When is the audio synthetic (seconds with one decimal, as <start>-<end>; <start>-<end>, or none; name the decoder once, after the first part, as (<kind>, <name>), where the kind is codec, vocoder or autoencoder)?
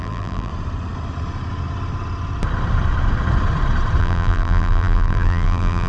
0.0-0.5 (vocoder, BigVGAN v2); 4.0-5.9